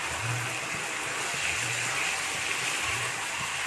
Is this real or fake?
real